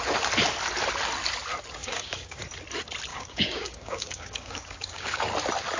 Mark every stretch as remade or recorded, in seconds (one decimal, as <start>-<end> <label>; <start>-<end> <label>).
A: 0.0-1.8 recorded; 1.8-2.4 remade; 2.4-3.1 recorded; 3.1-5.2 remade; 5.2-5.8 recorded